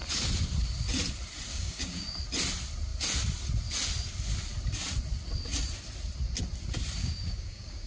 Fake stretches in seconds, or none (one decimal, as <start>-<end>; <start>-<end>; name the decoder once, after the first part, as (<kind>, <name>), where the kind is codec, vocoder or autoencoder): 1.5-2.2 (codec, DAC); 7.0-7.9

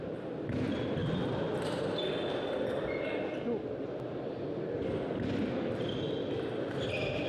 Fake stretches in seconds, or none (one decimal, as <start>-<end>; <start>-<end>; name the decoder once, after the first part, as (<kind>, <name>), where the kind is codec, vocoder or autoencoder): none

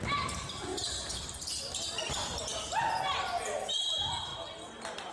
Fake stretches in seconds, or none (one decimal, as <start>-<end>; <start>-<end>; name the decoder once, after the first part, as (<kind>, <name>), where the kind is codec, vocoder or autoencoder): 0.0-4.3 (vocoder, BigVGAN v2)

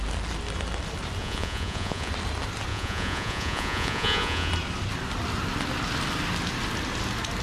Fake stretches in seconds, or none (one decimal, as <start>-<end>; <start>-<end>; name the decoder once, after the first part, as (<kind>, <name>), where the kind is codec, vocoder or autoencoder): 1.2-2.1 (vocoder, Vocos); 2.7-4.5

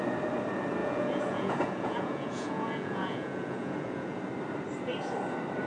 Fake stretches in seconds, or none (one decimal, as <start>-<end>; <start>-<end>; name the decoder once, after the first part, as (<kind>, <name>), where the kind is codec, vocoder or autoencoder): 0.8-4.2 (vocoder, Vocos)

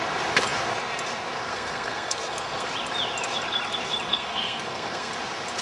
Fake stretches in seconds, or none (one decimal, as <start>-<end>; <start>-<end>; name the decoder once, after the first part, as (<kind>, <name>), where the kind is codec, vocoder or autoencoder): 1.5-2.7 (codec, SNAC); 4.1-5.1

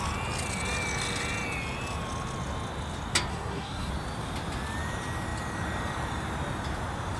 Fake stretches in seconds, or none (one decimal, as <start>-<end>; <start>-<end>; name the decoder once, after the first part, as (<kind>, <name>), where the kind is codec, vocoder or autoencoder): 3.3-3.9 (codec, SNAC)